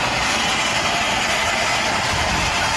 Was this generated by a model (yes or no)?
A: no